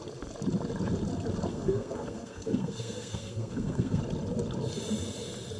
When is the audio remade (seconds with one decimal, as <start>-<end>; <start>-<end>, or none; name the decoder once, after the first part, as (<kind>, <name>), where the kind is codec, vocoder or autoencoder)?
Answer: 1.5-4.0 (codec, SNAC)

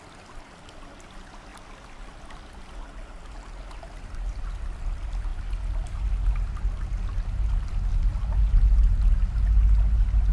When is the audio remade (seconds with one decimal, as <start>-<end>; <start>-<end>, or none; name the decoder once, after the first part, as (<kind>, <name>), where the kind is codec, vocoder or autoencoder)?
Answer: none

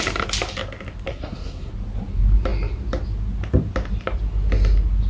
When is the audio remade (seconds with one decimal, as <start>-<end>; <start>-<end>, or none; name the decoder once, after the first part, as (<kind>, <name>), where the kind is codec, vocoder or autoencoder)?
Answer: 1.1-1.7 (codec, SNAC)

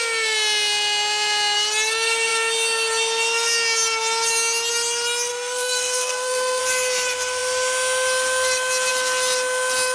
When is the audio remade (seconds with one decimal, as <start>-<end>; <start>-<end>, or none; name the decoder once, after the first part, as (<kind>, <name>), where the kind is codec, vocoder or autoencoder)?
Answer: 5.3-6.6 (codec, SNAC)